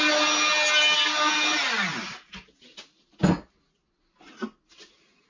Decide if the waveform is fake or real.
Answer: real